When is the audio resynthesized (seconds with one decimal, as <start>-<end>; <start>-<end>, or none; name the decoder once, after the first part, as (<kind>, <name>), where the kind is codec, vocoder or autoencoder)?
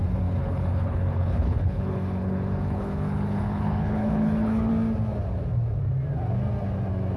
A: 0.4-4.7 (codec, HILCodec)